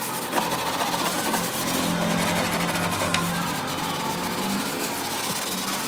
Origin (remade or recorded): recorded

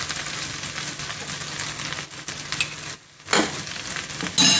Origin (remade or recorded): recorded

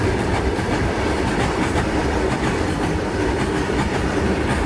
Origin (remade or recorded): remade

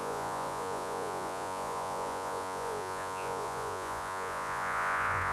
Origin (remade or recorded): remade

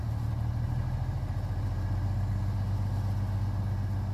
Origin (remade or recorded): recorded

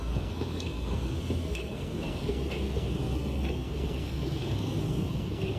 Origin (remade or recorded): remade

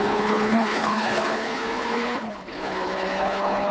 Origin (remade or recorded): remade